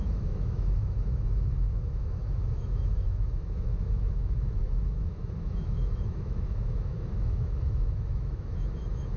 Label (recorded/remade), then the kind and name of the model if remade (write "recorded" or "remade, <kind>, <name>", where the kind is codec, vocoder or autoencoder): remade, autoencoder, DAC-VAE